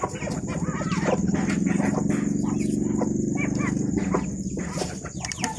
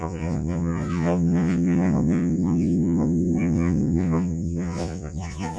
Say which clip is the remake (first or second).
second